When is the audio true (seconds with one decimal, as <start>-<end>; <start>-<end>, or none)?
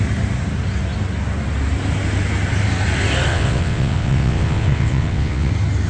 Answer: 0.0-3.3; 5.5-5.9